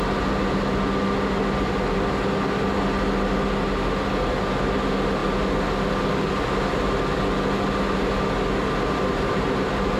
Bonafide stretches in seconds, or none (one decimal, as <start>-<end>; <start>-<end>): 0.0-10.0